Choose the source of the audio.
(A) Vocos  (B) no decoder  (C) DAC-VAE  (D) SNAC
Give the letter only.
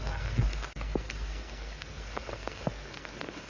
D